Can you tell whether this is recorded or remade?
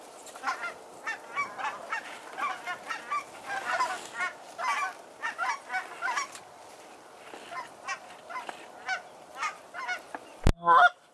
recorded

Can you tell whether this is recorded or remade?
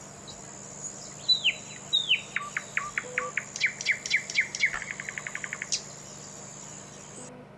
recorded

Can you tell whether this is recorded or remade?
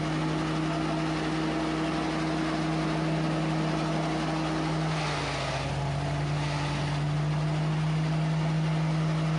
recorded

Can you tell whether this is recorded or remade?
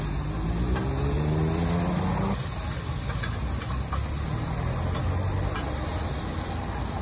recorded